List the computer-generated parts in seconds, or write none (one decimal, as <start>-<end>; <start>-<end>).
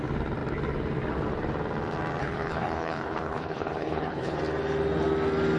2.2-4.4